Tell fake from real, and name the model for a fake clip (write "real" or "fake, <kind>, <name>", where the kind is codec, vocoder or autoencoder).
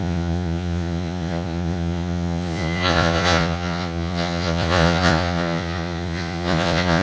fake, vocoder, Vocos